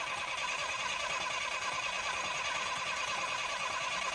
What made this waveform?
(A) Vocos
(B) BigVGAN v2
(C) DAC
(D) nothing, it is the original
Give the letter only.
B